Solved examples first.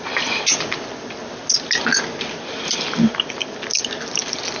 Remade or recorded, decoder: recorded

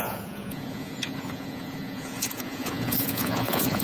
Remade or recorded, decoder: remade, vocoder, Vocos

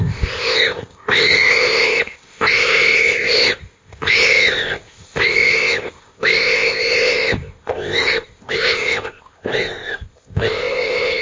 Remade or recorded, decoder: remade, codec, ZipCodec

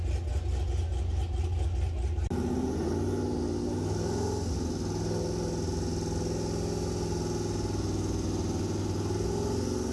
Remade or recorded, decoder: recorded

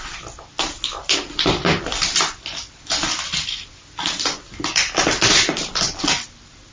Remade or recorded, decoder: recorded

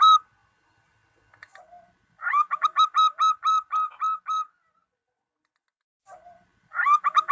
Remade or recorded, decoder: recorded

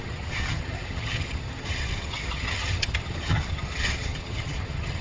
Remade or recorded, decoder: remade, vocoder, HiFi-GAN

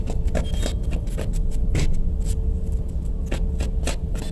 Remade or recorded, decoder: recorded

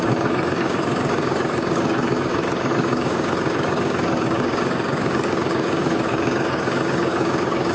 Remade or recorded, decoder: remade, codec, DAC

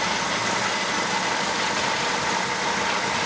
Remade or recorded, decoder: recorded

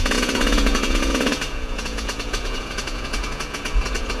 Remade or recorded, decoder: remade, vocoder, Vocos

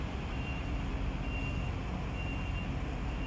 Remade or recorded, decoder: recorded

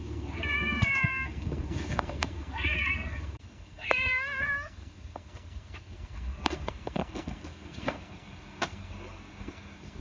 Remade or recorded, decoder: remade, codec, SNAC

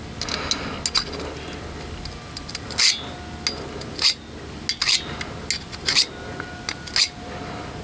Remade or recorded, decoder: recorded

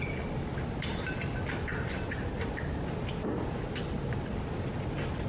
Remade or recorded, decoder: recorded